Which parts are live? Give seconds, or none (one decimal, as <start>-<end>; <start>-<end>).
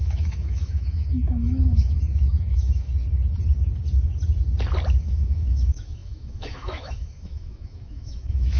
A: 2.9-5.0